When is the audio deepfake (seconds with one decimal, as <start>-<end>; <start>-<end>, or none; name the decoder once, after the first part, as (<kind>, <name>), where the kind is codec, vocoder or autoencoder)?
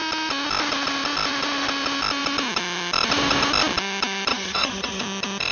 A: 4.3-5.0 (vocoder, HiFi-GAN)